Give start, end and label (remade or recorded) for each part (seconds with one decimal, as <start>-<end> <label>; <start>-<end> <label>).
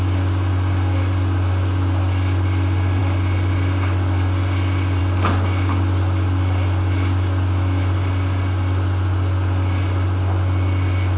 0.0-11.2 recorded